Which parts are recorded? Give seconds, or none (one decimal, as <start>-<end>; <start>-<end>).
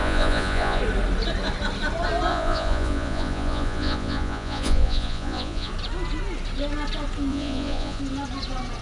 0.8-2.3; 5.7-7.3; 8.0-8.8